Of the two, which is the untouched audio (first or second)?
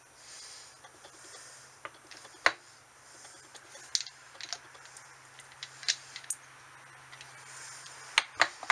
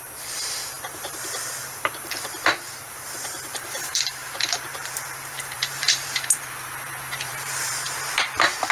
first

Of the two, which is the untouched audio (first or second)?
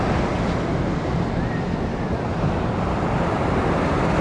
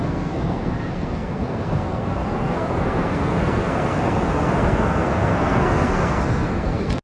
first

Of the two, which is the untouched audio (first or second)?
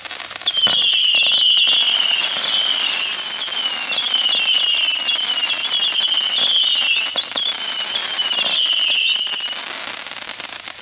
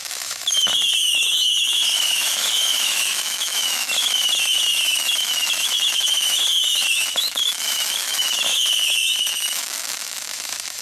first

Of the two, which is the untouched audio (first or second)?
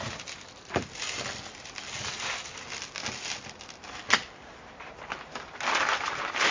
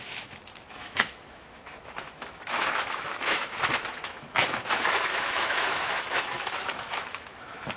first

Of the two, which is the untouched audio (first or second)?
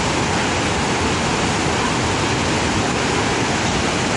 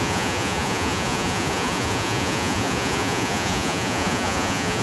first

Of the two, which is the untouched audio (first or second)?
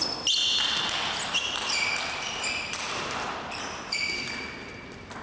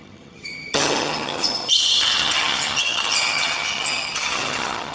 first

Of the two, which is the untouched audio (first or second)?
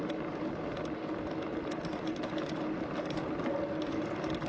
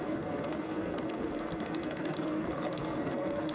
first